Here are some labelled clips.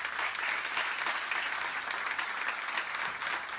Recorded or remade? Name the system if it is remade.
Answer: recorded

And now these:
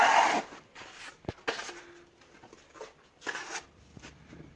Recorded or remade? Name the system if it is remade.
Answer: recorded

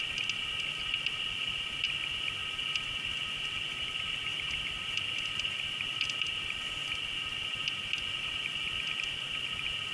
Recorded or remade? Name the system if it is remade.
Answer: recorded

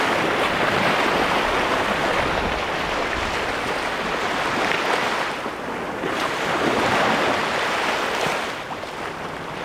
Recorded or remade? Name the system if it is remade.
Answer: recorded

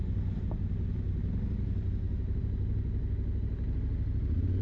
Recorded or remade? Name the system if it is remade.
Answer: recorded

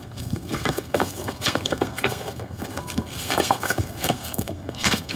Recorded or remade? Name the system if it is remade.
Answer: remade, codec, SNAC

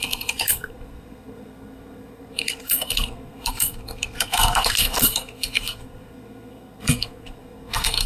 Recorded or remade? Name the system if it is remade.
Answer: remade, codec, SNAC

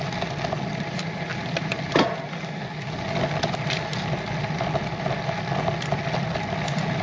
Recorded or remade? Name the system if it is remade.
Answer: recorded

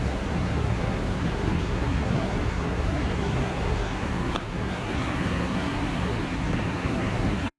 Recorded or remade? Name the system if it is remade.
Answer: remade, codec, SNAC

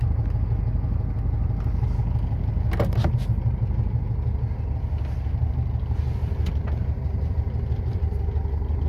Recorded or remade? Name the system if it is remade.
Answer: recorded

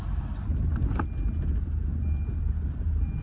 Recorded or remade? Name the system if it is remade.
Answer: recorded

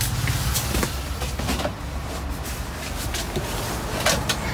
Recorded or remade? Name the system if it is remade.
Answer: recorded